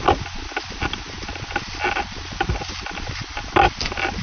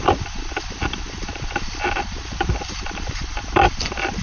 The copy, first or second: second